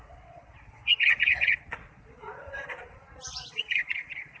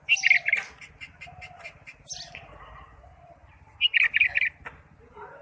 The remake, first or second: first